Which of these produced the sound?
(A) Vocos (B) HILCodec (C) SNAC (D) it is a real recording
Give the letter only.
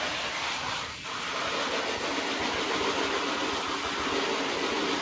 D